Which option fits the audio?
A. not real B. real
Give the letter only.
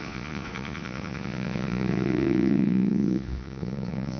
A